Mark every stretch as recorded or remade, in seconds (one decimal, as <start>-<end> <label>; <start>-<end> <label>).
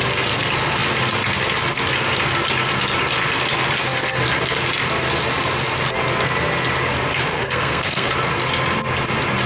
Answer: 0.0-7.3 recorded; 7.3-8.1 remade; 8.1-9.5 recorded